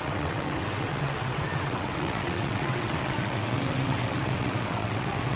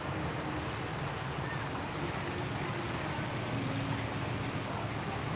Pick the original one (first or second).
second